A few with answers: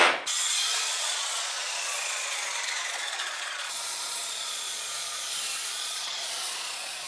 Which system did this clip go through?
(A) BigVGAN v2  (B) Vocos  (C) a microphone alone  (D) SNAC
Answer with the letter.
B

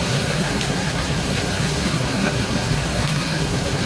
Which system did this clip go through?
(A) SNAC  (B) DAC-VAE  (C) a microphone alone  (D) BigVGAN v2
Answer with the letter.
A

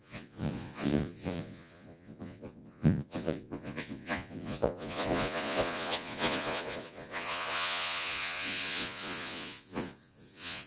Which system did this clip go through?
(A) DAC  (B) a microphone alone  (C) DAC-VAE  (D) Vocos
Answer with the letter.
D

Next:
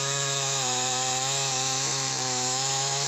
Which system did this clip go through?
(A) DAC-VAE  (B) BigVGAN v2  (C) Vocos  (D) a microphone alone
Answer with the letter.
A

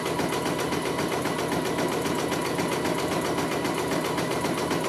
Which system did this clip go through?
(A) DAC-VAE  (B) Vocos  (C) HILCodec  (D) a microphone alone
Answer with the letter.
D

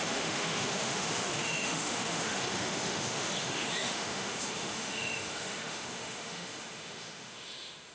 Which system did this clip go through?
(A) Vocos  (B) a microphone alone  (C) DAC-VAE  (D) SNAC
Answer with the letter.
C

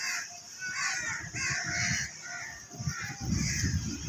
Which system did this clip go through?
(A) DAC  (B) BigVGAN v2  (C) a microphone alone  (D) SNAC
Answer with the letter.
C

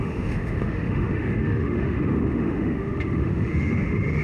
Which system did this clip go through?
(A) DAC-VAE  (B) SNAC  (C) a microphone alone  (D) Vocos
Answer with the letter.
A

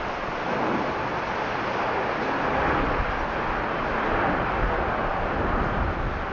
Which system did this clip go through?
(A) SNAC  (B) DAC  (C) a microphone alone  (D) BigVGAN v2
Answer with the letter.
C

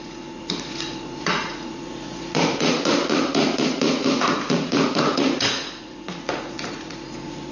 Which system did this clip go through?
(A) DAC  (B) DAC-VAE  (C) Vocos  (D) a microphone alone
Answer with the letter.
C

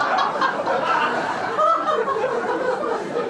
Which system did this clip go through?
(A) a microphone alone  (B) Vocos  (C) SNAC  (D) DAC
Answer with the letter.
A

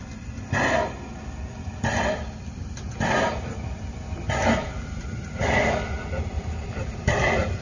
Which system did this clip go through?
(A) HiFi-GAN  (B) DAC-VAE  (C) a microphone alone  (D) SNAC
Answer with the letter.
C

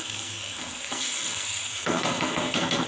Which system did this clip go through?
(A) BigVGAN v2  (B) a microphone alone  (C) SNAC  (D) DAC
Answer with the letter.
C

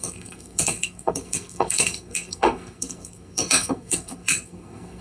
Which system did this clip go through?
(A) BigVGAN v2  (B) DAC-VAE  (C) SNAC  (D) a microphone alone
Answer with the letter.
C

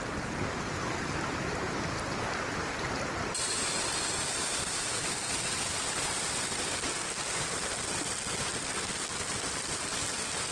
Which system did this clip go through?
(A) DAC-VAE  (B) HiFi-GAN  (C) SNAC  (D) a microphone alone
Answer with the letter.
D